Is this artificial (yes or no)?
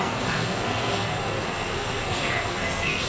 yes